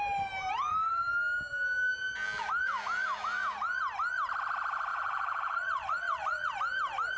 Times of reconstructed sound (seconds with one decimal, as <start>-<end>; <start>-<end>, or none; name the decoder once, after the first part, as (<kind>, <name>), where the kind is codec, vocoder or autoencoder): 4.9-6.5 (vocoder, Vocos)